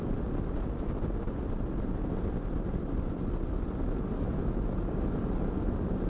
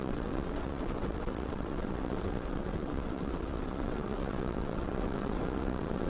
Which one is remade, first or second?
second